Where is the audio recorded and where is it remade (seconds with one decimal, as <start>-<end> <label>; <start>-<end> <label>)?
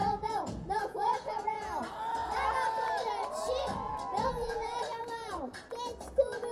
0.0-1.8 remade; 1.8-4.1 recorded; 4.1-4.8 remade; 4.8-6.5 recorded